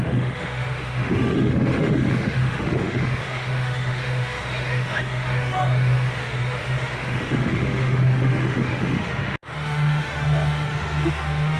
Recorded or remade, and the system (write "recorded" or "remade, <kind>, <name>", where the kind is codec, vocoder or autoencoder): remade, autoencoder, DAC-VAE